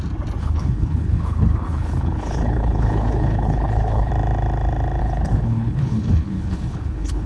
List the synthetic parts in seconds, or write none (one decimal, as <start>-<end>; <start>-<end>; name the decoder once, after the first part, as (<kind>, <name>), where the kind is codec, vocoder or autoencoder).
0.4-4.1 (codec, HILCodec); 5.0-7.3